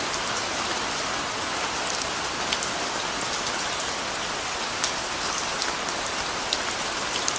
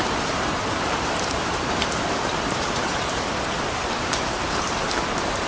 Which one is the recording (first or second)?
first